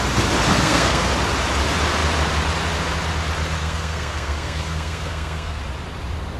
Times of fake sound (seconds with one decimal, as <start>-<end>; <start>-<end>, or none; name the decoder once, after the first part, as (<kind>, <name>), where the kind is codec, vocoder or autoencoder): 0.5-1.1 (codec, SNAC); 3.6-5.6